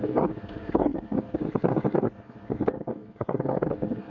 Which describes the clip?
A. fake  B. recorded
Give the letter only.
A